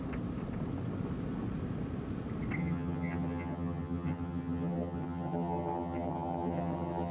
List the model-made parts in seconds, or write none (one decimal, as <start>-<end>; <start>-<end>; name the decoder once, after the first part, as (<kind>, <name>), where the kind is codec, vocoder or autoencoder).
2.6-7.1 (vocoder, HiFi-GAN)